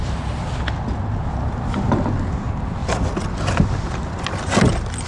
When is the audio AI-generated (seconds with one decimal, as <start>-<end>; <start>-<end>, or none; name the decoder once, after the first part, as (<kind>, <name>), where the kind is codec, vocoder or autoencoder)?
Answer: none